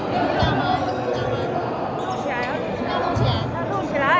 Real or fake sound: real